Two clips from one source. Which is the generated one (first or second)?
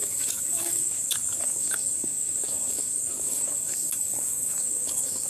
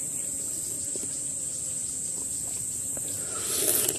first